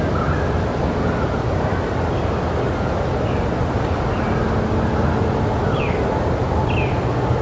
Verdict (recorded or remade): recorded